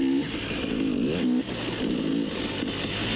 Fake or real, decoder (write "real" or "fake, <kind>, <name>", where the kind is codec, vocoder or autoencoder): real